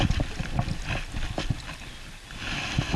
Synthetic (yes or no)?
no